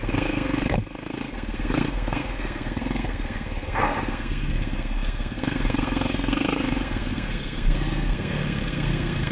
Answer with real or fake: fake